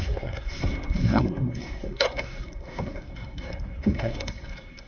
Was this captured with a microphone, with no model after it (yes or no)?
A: no